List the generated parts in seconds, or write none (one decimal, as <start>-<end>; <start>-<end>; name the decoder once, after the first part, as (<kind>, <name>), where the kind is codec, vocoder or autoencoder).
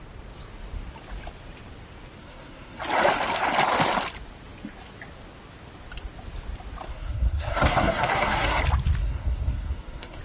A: 2.2-2.8 (codec, SNAC); 6.9-8.6; 9.0-10.2